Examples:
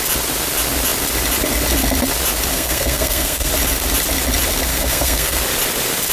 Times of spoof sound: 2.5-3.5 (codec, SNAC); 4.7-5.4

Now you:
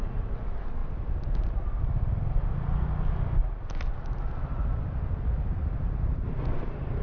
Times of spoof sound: none

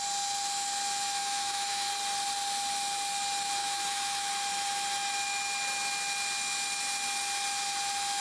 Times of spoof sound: 1.2-1.9 (autoencoder, DAC-VAE); 3.6-4.3

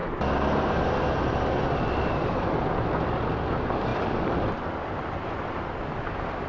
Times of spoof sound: 3.9-6.5 (vocoder, BigVGAN v2)